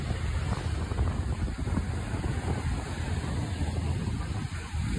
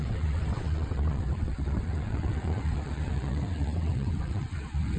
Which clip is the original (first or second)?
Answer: first